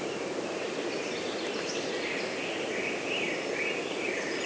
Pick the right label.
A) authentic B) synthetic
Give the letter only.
A